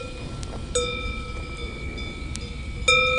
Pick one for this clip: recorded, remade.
recorded